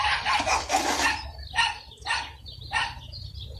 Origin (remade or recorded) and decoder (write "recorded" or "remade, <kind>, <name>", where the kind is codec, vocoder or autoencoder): recorded